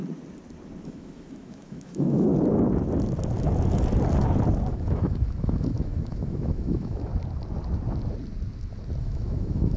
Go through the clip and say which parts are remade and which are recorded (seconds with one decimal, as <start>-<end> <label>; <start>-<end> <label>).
0.0-0.8 recorded; 0.8-2.3 remade; 2.3-4.7 recorded; 4.7-7.1 remade; 7.1-9.0 recorded; 9.0-9.8 remade